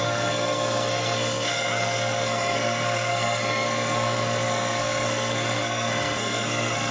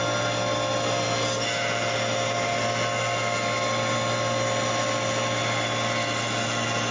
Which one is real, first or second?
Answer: second